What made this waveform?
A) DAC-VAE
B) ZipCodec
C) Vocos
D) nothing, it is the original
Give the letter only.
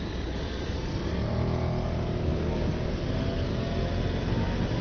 D